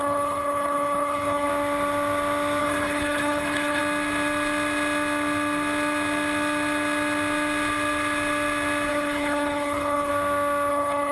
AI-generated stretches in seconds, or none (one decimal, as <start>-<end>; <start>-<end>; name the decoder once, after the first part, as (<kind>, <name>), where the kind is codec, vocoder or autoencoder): 0.0-1.5 (codec, HILCodec); 2.6-3.8; 8.9-10.1; 10.7-11.1